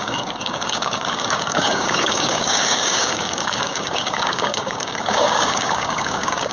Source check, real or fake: fake